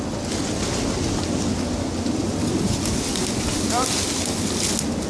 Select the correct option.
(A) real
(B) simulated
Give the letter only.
A